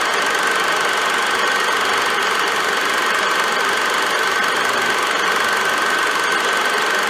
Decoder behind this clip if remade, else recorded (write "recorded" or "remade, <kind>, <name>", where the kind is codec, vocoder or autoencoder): recorded